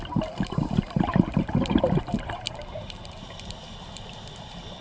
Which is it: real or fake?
fake